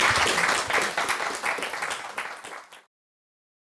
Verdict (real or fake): real